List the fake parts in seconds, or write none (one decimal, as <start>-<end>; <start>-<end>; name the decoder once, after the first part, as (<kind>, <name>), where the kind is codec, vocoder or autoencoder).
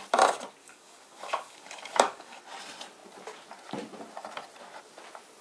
0.6-2.4 (codec, DAC)